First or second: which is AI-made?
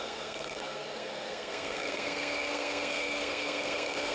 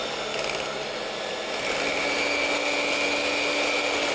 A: first